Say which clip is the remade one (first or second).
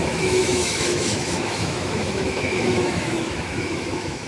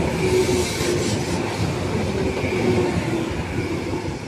first